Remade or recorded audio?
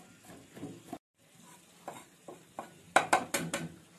recorded